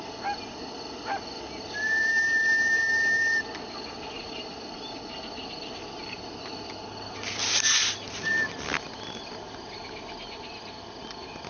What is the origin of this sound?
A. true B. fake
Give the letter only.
A